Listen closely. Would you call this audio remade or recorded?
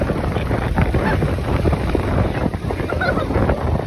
remade